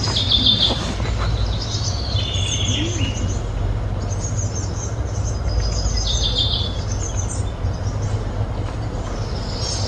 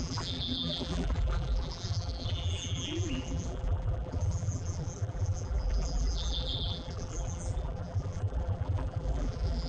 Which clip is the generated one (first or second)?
second